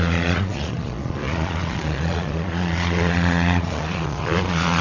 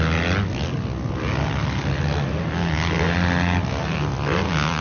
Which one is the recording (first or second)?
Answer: second